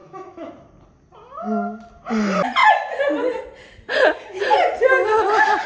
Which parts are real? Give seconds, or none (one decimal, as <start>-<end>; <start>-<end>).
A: 0.5-5.7